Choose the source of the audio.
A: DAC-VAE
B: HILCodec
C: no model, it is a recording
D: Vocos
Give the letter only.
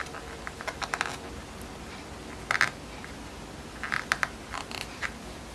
C